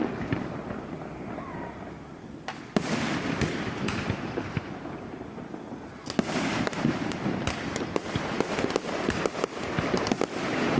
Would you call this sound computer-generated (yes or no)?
no